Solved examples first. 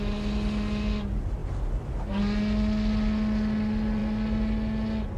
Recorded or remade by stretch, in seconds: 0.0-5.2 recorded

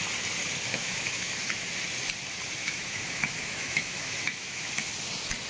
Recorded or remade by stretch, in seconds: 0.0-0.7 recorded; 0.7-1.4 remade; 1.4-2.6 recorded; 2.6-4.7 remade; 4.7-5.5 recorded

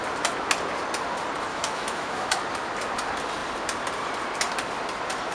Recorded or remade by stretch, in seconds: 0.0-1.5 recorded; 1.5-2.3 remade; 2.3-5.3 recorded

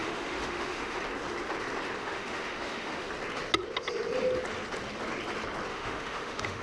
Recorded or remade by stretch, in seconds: 0.0-1.0 remade; 1.0-2.0 recorded; 2.0-3.1 remade; 3.1-5.7 recorded; 5.7-6.6 remade

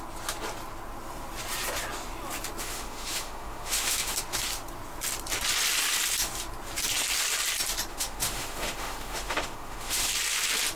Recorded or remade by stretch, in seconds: 0.0-2.6 recorded; 2.6-4.2 remade; 4.2-7.9 recorded; 7.9-10.1 remade; 10.1-10.8 recorded

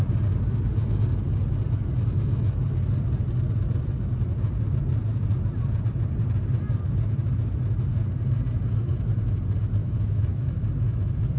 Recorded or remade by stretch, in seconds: 0.0-9.8 recorded; 9.8-10.5 remade; 10.5-11.4 recorded

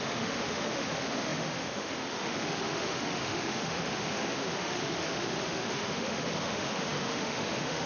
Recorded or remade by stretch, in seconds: 0.0-7.9 remade